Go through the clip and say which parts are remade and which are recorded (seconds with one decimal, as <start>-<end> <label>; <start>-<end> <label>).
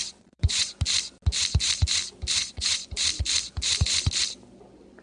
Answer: 0.0-0.8 remade; 0.8-2.4 recorded; 2.4-2.9 remade; 2.9-5.0 recorded